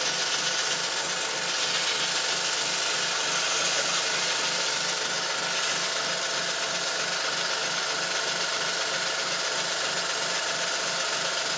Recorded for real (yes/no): yes